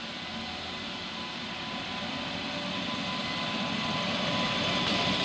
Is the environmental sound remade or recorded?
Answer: recorded